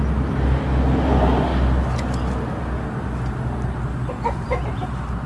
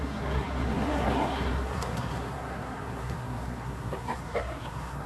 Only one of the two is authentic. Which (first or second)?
first